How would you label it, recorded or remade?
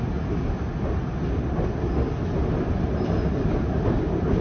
recorded